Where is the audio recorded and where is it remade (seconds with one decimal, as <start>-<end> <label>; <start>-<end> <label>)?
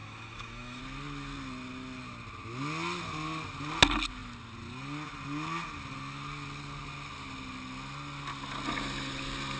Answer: 0.0-0.8 remade; 0.8-9.6 recorded